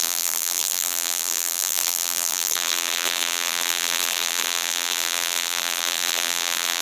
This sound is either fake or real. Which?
fake